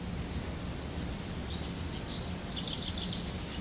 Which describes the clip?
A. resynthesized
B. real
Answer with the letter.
B